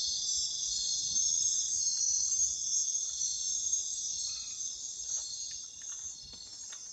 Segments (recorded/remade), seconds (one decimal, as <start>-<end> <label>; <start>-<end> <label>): 0.0-6.9 recorded